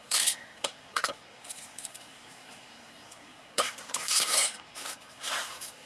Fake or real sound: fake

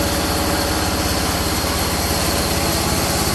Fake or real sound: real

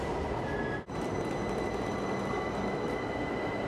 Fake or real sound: real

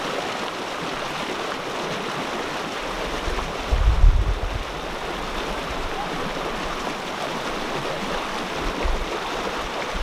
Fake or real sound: real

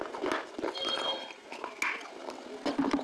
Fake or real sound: real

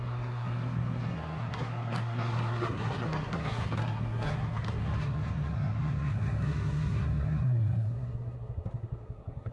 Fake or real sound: fake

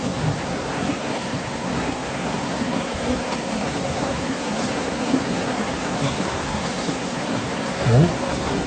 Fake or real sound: fake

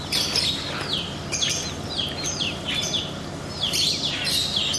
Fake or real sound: real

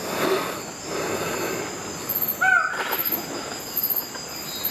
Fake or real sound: real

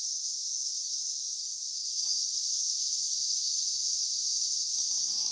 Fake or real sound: fake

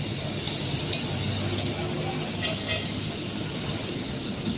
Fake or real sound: real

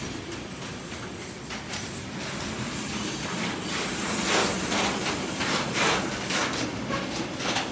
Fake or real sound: real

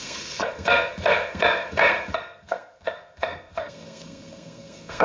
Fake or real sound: fake